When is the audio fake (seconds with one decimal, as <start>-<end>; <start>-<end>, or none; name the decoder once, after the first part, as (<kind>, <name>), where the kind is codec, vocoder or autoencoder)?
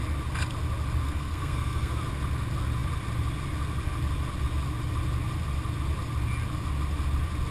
1.0-1.9 (codec, SNAC)